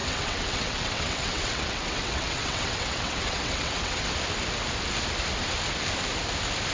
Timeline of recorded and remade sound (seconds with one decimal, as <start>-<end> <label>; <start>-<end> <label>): 0.0-4.0 remade; 4.0-6.7 recorded